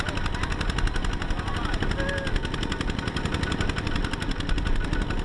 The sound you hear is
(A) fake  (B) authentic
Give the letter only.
B